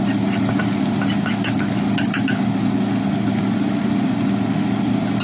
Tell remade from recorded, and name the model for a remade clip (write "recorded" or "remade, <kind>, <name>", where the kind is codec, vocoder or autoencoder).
recorded